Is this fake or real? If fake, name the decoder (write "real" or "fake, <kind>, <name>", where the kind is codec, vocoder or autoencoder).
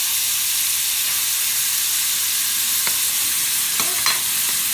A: real